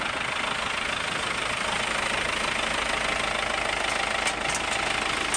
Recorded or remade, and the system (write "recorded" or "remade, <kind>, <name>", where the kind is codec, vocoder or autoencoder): recorded